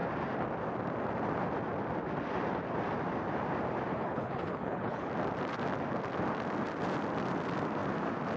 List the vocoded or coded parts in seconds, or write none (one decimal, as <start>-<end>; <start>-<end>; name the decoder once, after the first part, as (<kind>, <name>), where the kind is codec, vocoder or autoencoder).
3.9-5.1 (codec, HILCodec)